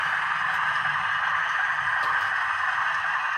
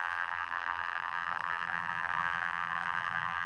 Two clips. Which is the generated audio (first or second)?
second